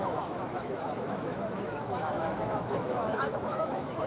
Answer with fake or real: fake